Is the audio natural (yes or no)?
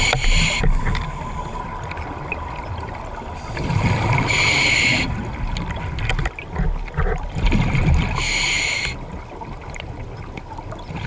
yes